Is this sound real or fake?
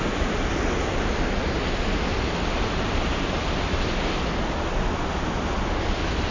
real